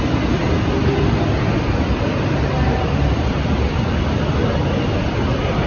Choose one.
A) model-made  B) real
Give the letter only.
B